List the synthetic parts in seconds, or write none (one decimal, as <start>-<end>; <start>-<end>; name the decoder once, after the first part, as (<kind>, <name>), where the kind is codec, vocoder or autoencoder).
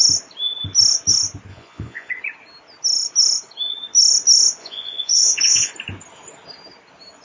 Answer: 1.5-2.1 (vocoder, Vocos); 4.6-5.7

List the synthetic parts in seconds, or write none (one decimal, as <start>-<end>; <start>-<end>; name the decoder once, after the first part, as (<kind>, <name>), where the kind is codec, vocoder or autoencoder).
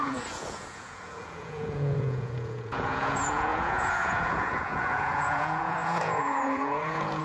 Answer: 0.0-7.2 (vocoder, Vocos)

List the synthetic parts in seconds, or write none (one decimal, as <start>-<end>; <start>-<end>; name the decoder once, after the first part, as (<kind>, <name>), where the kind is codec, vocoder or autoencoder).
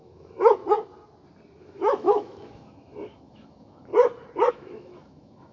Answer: 0.0-0.6 (autoencoder, DAC-VAE); 1.6-3.9; 4.5-5.5